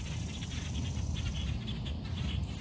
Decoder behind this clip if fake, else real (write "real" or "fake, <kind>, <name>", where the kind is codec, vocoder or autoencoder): fake, vocoder, BigVGAN v2